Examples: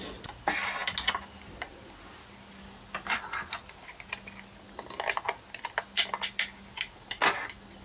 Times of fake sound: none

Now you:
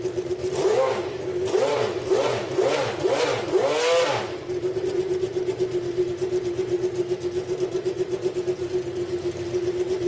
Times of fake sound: none

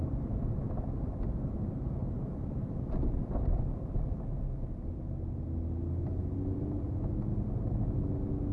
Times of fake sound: 2.0-7.0 (vocoder, BigVGAN v2)

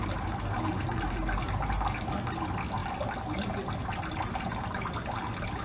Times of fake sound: none

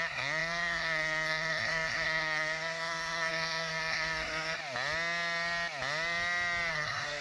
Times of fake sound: 0.0-4.6 (codec, SNAC); 6.7-7.2

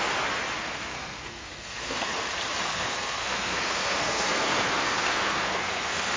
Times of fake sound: 0.6-2.1 (codec, SNAC); 2.7-6.2

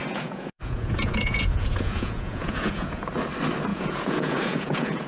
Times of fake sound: 0.0-3.1 (vocoder, Vocos); 3.7-5.1